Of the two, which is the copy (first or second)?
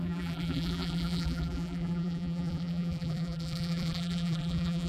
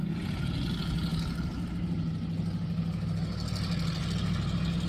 first